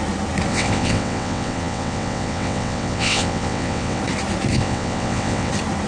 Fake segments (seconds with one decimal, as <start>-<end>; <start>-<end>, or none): 0.5-4.0; 4.5-5.5